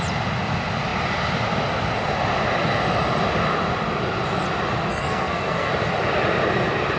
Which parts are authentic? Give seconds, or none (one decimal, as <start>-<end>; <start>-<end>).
0.0-4.9; 5.7-7.0

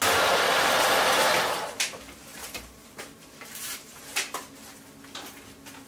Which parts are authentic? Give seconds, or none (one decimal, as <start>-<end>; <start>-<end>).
0.0-2.3; 4.0-5.9